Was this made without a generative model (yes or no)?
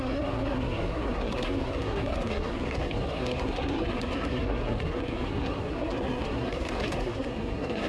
no